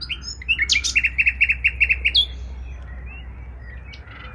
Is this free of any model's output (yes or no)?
yes